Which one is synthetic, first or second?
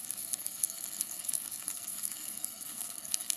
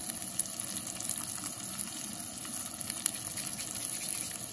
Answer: first